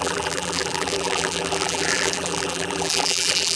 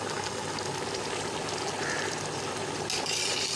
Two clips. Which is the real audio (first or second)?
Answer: second